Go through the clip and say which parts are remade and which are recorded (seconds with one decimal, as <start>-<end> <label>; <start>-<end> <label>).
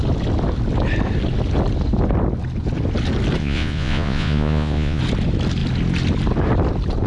0.0-3.4 recorded; 3.4-5.0 remade; 5.0-7.1 recorded